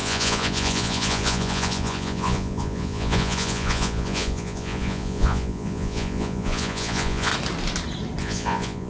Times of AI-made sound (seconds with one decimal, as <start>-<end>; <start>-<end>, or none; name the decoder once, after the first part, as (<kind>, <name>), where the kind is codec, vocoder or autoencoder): 0.0-7.3 (vocoder, Vocos); 8.2-8.9